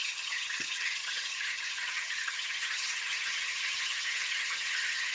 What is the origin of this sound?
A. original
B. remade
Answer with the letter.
B